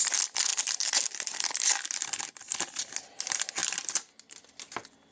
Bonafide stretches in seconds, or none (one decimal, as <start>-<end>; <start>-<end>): 0.0-5.1